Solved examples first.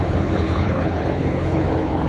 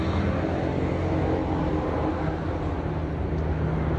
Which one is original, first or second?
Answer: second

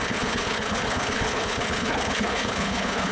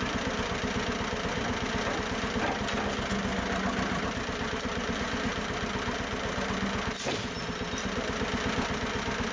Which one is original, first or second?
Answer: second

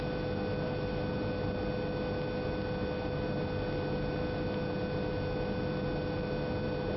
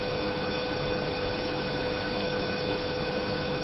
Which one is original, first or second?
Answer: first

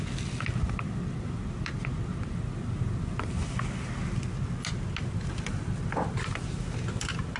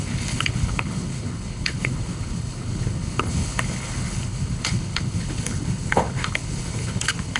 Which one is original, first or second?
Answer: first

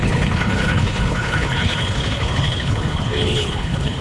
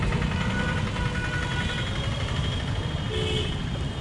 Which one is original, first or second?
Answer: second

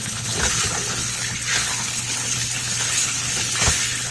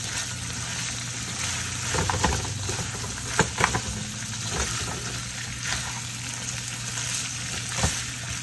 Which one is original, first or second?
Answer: second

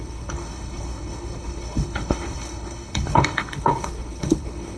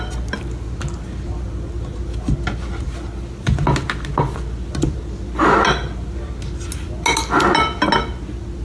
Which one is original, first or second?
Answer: second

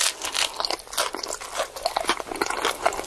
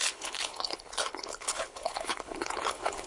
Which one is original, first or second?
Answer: first